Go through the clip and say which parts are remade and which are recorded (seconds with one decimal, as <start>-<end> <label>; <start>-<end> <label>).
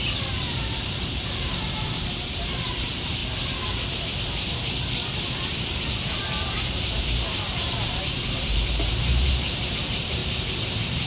0.0-3.2 remade; 3.2-5.9 recorded; 5.9-10.2 remade; 10.2-11.1 recorded